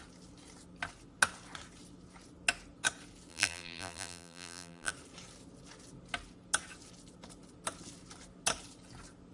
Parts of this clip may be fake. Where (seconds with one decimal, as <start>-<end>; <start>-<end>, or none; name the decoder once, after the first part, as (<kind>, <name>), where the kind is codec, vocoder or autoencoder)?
3.3-4.9 (vocoder, BigVGAN v2)